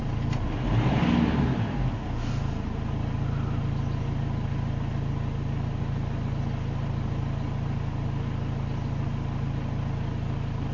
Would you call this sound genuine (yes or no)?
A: yes